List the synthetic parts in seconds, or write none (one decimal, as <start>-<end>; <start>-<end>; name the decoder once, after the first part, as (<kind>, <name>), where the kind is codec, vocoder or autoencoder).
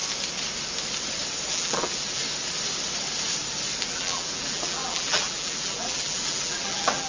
1.5-2.2 (vocoder, BigVGAN v2); 3.8-7.1